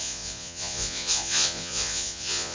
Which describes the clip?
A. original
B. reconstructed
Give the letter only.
B